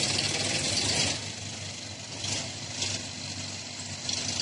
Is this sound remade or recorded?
recorded